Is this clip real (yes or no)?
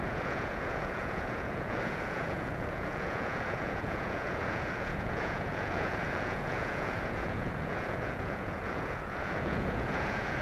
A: no